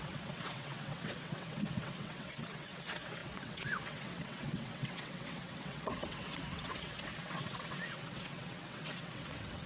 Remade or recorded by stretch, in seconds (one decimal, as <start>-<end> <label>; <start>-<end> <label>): 0.0-9.7 remade